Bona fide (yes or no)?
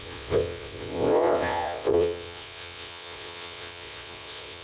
no